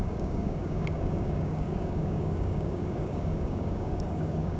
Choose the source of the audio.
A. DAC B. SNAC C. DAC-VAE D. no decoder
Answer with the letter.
A